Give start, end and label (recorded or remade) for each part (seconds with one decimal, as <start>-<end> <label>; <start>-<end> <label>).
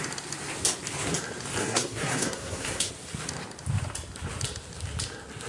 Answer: 0.0-1.6 recorded; 1.6-2.9 remade; 2.9-5.5 recorded